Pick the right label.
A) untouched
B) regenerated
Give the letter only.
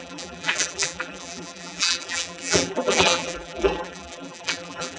B